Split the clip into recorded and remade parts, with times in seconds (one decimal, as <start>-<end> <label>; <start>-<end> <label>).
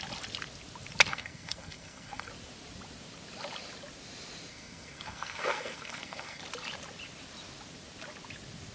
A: 0.0-1.1 recorded; 1.1-2.3 remade; 2.3-4.5 recorded; 4.5-6.4 remade; 6.4-8.7 recorded